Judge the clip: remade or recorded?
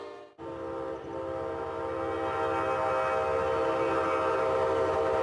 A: recorded